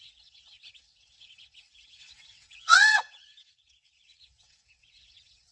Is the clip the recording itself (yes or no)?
no